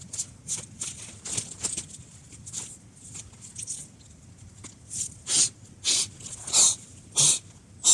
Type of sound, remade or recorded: recorded